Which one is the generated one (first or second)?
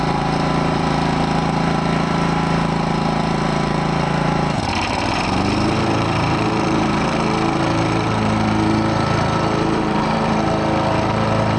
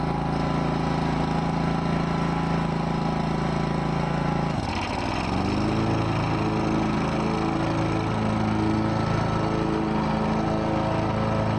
first